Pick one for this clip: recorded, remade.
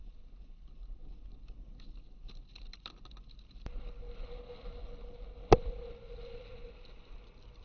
recorded